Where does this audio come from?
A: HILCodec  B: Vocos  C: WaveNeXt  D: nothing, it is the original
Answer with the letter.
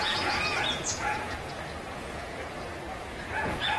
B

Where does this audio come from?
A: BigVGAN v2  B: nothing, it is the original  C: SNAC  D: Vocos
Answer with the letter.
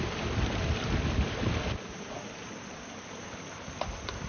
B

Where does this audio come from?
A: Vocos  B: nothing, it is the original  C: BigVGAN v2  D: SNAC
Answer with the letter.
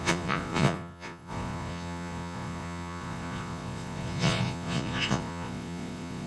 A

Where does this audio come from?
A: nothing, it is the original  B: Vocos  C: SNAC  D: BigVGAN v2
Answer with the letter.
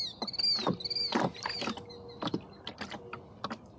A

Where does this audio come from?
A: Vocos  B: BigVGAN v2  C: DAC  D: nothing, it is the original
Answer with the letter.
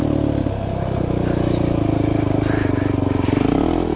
D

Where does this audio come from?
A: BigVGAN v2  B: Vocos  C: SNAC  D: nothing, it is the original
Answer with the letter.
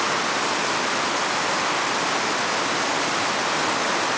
D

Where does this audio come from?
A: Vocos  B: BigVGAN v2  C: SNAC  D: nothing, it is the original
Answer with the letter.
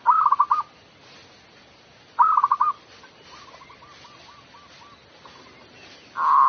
D